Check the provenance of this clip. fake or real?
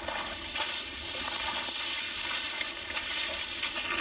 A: real